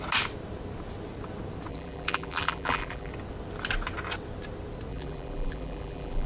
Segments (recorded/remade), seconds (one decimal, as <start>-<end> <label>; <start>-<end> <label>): 0.0-1.7 recorded; 1.7-3.1 remade; 3.1-4.9 recorded; 4.9-6.3 remade